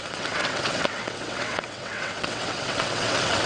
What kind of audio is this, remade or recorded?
remade